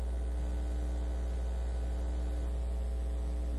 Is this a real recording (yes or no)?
yes